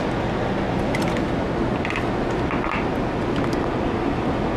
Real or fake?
real